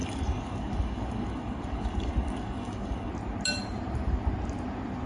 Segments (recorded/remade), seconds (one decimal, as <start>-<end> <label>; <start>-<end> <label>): 0.0-3.1 remade; 3.1-5.1 recorded